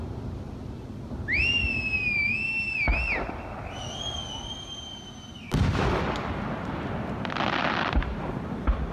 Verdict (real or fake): real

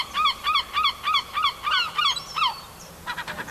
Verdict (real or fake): real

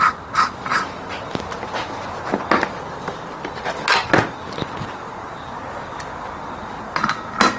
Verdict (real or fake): real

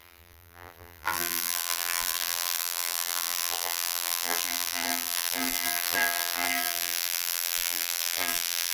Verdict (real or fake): fake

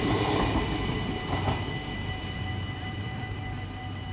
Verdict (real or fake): fake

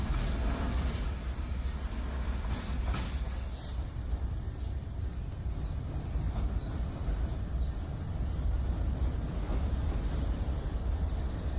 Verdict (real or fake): real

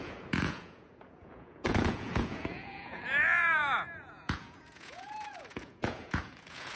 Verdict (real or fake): fake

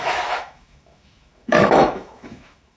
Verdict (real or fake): fake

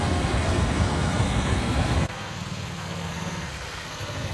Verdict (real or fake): fake